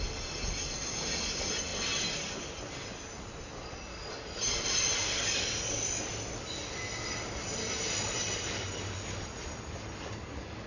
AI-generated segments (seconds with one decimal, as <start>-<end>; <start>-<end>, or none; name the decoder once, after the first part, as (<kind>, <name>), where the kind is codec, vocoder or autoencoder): none